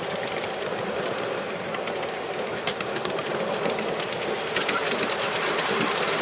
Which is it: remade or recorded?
recorded